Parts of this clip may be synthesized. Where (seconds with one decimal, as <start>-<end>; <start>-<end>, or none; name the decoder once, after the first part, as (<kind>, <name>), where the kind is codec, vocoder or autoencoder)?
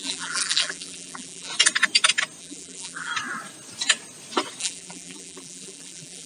0.0-1.5 (vocoder, BigVGAN v2); 2.4-3.1; 4.6-6.3